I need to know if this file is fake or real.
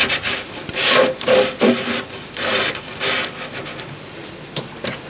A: real